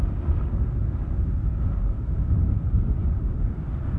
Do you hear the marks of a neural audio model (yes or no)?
no